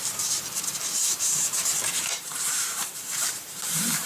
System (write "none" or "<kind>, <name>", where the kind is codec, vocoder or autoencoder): vocoder, BigVGAN v2